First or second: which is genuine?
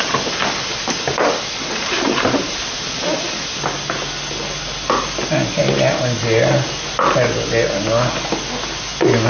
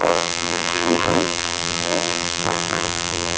first